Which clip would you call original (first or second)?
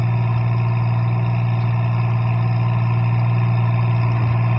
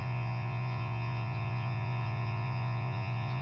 first